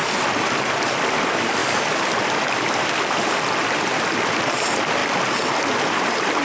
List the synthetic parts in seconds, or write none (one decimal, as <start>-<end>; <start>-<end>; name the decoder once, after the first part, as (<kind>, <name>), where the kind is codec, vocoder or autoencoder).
1.6-3.3 (vocoder, BigVGAN v2)